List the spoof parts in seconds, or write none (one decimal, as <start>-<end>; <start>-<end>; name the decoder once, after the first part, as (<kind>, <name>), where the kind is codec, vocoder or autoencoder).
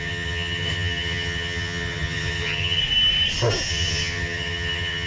0.0-2.8 (vocoder, HiFi-GAN); 3.7-5.1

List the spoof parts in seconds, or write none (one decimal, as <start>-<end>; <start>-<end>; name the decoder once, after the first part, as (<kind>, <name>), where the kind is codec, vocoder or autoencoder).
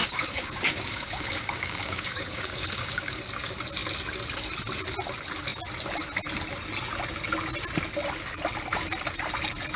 0.0-3.2 (codec, DAC)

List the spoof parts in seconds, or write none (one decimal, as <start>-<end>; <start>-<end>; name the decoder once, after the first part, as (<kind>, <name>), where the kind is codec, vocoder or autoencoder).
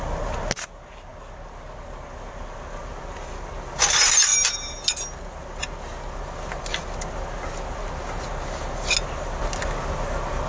none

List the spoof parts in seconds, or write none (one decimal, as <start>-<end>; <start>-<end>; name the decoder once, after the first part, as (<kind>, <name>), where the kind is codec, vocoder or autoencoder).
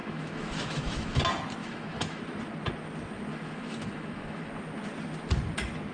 0.0-1.2 (autoencoder, DAC-VAE); 1.6-2.2; 3.3-4.5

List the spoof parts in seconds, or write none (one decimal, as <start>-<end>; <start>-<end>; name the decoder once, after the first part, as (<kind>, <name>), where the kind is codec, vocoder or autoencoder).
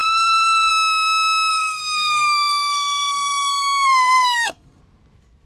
0.0-0.7 (codec, SNAC); 1.5-4.8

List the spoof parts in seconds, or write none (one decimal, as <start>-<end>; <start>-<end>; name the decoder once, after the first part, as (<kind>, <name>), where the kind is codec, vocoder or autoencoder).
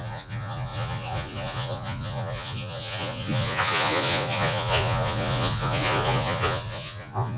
0.0-7.4 (vocoder, Vocos)